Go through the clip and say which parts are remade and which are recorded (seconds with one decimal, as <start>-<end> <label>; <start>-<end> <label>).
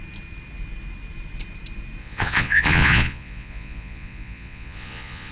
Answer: 0.0-2.0 recorded; 2.0-5.3 remade